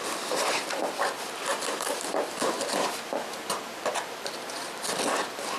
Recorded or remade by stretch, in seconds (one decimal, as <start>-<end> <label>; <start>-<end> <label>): 0.0-1.5 recorded; 1.5-4.9 remade; 4.9-5.6 recorded